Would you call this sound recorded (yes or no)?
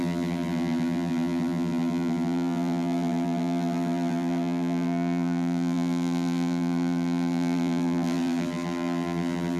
no